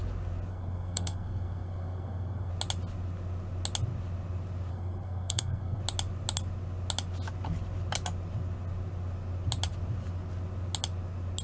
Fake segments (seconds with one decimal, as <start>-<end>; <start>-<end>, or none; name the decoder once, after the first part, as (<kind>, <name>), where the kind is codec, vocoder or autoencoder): 0.5-2.5 (codec, SNAC); 4.7-5.8